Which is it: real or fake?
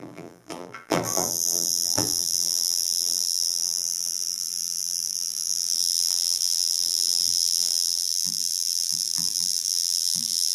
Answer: fake